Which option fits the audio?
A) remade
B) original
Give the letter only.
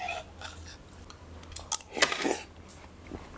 B